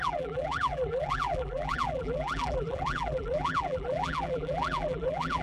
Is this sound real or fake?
fake